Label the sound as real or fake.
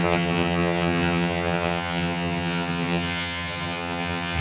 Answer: fake